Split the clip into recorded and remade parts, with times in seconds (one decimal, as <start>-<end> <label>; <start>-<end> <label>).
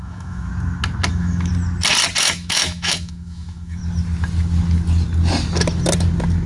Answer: 0.0-0.5 remade; 0.5-1.1 recorded; 1.1-1.5 remade; 1.5-2.2 recorded; 2.2-3.8 remade; 3.8-6.5 recorded